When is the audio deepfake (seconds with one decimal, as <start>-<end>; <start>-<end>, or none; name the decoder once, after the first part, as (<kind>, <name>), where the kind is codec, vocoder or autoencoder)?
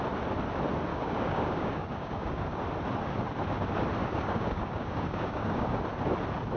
0.9-2.5 (codec, DAC); 4.0-5.8